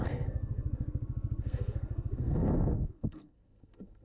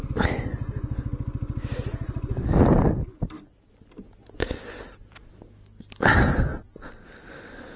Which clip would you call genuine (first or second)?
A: second